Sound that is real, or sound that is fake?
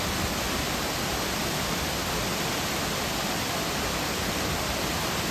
real